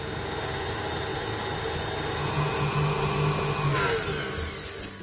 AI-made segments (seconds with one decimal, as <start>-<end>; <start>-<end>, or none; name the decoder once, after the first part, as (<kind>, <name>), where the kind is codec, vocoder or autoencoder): none